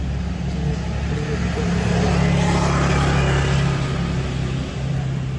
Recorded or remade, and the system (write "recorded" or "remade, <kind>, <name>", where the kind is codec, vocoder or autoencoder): recorded